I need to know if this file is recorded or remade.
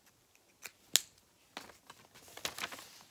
recorded